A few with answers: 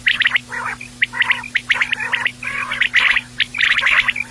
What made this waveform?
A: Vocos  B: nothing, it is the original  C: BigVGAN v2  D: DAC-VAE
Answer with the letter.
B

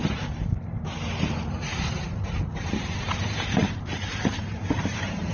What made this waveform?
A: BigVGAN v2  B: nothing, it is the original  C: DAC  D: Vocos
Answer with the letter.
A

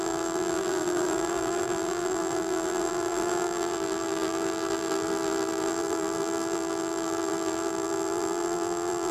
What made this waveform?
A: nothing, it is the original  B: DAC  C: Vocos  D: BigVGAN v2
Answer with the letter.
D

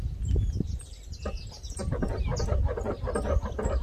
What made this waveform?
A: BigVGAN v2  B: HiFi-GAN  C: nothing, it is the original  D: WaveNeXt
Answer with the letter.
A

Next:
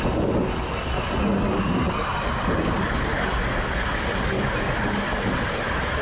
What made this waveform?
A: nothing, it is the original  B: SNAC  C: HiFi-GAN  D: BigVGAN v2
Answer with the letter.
A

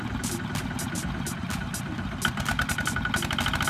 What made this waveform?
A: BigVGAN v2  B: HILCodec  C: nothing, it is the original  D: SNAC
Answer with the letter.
C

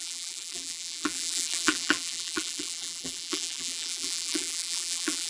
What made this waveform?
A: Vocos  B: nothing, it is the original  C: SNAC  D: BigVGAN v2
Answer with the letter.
D